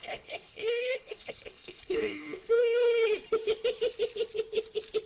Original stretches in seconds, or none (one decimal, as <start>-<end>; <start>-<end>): 3.1-5.1